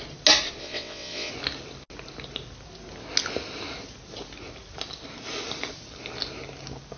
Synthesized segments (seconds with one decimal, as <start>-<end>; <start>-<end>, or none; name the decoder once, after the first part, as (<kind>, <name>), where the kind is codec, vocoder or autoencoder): 0.6-1.3 (vocoder, WaveNeXt)